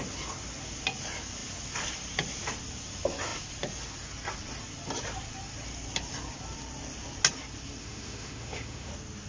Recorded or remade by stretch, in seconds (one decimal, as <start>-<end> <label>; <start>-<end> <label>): 0.0-7.8 recorded; 7.8-8.9 remade; 8.9-9.3 recorded